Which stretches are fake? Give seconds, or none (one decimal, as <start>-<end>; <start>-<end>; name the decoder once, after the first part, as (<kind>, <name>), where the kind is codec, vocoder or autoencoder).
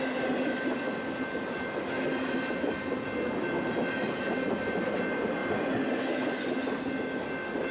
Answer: none